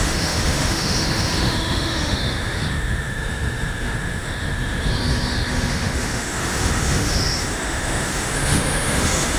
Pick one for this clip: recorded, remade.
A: remade